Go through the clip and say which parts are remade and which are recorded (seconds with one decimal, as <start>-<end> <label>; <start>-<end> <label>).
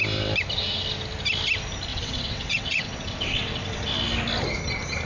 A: 0.0-1.9 recorded; 1.9-3.9 remade; 3.9-5.1 recorded